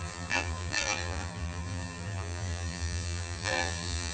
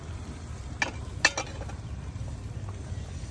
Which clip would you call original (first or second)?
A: second